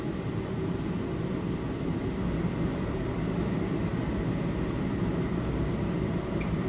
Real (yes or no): yes